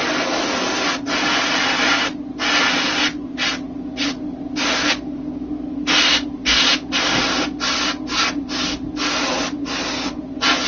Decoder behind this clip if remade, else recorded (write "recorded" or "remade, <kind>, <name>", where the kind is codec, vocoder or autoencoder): recorded